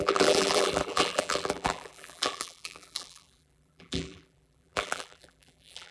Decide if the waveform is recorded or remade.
remade